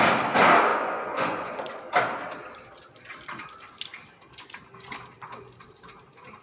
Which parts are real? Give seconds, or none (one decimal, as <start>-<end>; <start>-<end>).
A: 0.0-0.7; 1.8-6.4